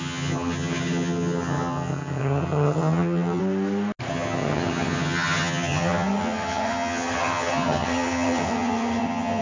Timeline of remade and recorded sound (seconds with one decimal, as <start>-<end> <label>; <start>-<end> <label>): 0.0-3.4 remade; 3.4-4.1 recorded; 4.1-9.4 remade